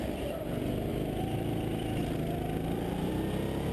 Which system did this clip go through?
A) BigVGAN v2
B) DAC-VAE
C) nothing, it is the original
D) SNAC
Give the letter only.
C